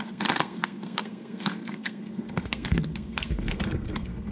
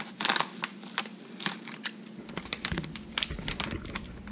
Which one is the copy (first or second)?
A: first